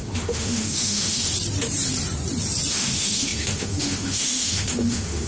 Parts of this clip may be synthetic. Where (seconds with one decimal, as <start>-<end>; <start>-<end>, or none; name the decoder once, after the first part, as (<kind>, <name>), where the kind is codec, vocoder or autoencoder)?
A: 0.0-1.3 (autoencoder, DAC-VAE); 2.7-5.3